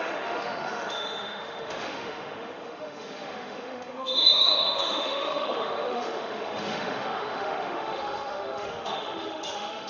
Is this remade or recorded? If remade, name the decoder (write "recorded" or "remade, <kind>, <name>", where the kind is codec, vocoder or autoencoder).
remade, autoencoder, DAC-VAE